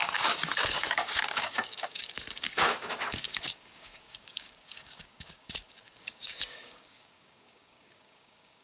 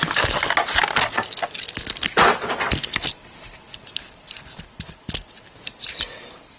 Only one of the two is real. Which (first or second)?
second